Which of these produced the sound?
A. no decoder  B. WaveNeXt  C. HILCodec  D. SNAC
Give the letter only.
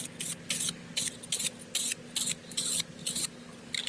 A